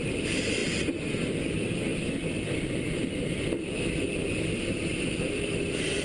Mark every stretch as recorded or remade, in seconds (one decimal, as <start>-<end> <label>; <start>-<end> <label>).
0.0-4.2 remade; 4.2-5.1 recorded; 5.1-6.0 remade